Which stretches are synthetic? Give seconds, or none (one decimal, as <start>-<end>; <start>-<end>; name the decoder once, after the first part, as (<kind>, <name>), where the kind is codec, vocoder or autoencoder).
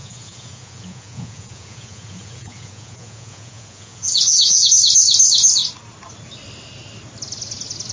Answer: 0.0-4.7 (vocoder, Vocos)